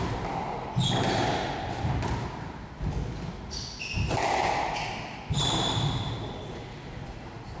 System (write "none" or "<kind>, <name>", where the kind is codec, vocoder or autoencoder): none